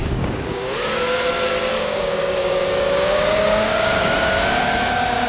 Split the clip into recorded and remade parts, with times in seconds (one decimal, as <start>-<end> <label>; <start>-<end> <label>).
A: 0.0-1.0 remade; 1.0-1.7 recorded; 1.7-5.3 remade